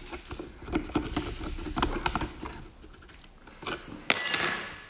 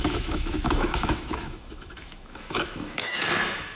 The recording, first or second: first